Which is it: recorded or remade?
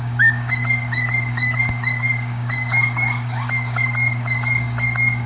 remade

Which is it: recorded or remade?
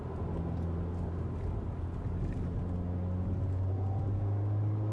recorded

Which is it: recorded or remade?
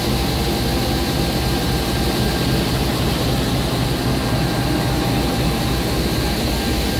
recorded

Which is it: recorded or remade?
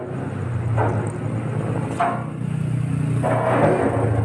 recorded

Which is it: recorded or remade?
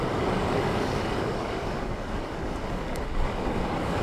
remade